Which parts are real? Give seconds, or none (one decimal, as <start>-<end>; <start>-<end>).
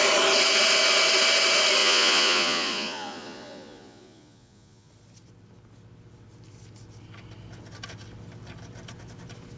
0.0-1.8; 4.9-9.6